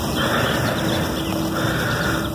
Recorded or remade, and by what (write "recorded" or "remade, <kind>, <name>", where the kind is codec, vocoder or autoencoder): recorded